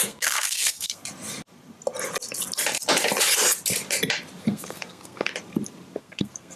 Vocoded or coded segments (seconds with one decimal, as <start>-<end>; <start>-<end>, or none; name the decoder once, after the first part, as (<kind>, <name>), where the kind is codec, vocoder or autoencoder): 0.0-1.0 (codec, SNAC); 4.4-5.3; 6.0-6.6